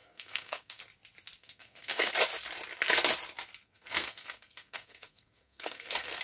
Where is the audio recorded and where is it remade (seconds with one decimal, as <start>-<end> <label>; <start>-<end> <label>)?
0.0-0.8 remade; 0.8-1.4 recorded; 1.4-2.1 remade; 2.1-3.6 recorded; 3.6-6.2 remade